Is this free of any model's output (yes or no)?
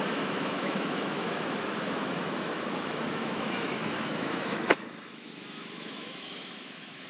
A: no